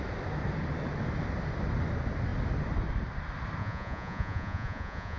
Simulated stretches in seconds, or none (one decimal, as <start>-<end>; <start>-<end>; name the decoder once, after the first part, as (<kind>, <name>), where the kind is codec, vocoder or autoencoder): 3.6-5.2 (vocoder, Vocos)